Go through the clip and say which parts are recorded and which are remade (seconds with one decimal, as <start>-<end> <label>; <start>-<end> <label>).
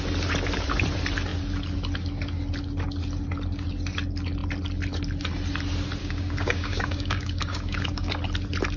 0.0-6.0 recorded; 6.0-8.1 remade; 8.1-8.8 recorded